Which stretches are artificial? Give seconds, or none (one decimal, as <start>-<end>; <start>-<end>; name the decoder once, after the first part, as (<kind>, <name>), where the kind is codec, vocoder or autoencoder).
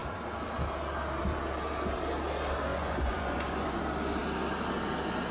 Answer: 2.7-3.8 (vocoder, Vocos)